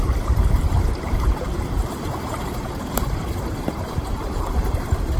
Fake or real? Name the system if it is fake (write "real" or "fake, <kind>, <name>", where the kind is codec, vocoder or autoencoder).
fake, vocoder, BigVGAN v2